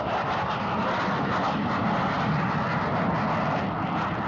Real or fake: real